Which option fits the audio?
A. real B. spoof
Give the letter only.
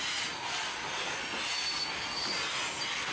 A